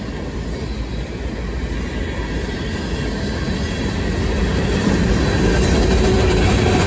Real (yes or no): yes